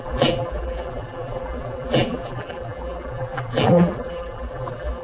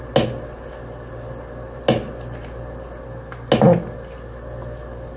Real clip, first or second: second